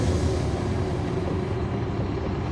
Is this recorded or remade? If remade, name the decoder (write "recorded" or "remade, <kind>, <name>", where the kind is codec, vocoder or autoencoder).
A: recorded